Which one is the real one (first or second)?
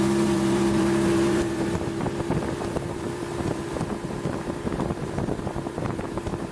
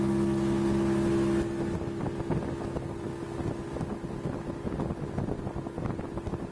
second